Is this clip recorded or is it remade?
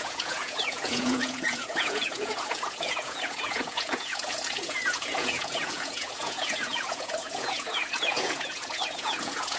remade